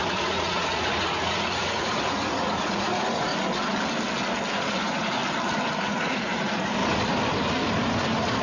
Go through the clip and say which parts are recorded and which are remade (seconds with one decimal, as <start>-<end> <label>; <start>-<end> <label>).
0.0-3.3 remade; 3.3-4.5 recorded; 4.5-5.2 remade; 5.2-5.8 recorded; 5.8-6.8 remade; 6.8-8.4 recorded